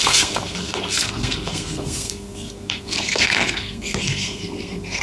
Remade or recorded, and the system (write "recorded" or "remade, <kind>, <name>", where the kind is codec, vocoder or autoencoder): remade, codec, SNAC